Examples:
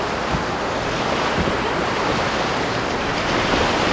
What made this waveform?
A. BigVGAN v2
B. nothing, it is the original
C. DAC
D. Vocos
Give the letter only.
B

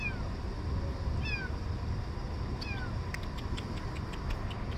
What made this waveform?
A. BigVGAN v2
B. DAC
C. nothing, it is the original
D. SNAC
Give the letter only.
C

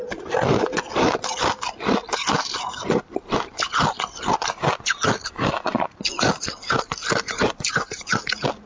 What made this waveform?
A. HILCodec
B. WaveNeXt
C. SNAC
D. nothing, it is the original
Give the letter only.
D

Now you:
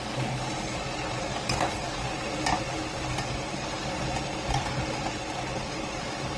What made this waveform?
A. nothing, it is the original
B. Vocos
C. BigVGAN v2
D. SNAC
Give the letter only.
A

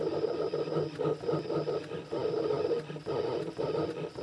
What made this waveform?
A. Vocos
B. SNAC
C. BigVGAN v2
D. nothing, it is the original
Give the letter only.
D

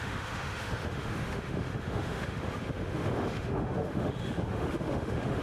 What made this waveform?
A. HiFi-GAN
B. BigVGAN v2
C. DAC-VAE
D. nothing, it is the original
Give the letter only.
C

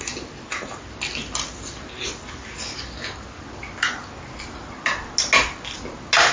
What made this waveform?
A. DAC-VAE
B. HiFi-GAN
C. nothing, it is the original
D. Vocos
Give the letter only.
C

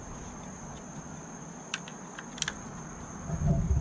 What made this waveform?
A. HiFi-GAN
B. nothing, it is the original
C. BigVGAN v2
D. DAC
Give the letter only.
B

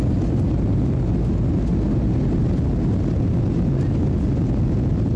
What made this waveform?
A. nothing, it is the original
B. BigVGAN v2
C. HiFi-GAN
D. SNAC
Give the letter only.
A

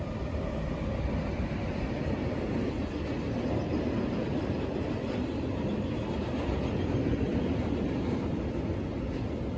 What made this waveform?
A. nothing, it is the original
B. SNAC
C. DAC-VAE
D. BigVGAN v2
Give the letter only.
A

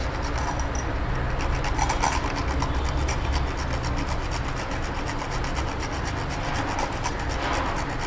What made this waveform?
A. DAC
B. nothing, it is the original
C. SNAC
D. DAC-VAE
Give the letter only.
B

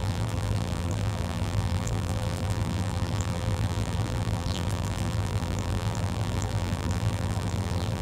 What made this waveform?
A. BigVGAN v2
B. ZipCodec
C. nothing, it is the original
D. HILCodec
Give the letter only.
A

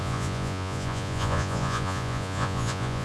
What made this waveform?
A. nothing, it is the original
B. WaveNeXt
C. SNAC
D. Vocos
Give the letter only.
D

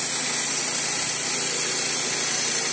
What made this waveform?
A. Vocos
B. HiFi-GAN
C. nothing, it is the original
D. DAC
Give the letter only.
C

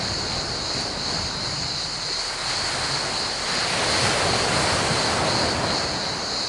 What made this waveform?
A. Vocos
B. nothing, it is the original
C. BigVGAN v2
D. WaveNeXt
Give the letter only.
B